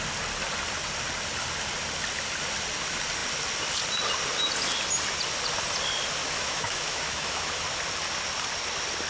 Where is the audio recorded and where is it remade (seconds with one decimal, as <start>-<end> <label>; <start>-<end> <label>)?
0.0-6.2 recorded; 6.2-7.6 remade; 7.6-9.1 recorded

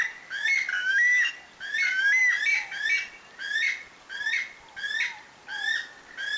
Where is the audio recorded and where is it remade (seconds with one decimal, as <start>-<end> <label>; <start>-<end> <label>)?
0.0-0.7 recorded; 0.7-1.3 remade; 1.3-6.4 recorded

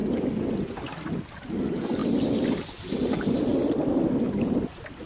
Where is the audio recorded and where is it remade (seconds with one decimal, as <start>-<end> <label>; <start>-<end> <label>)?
0.0-5.1 recorded

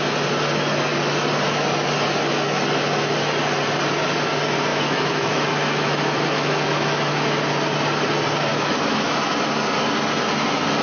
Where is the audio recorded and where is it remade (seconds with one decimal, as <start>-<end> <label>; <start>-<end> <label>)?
0.0-4.7 recorded; 4.7-7.1 remade; 7.1-8.5 recorded; 8.5-9.3 remade; 9.3-10.8 recorded

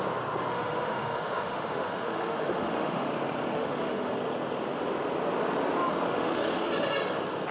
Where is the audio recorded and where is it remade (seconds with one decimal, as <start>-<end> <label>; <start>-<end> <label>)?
0.0-0.5 recorded; 0.5-3.1 remade; 3.1-3.5 recorded; 3.5-4.1 remade; 4.1-6.1 recorded; 6.1-6.7 remade; 6.7-7.5 recorded

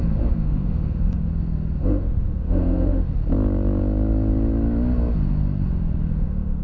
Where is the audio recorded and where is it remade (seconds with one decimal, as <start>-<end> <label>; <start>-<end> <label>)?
0.0-1.3 remade; 1.3-1.8 recorded; 1.8-3.2 remade; 3.2-6.1 recorded; 6.1-6.6 remade

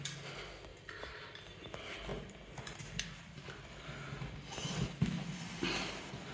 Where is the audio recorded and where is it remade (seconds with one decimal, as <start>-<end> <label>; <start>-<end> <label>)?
0.0-6.3 recorded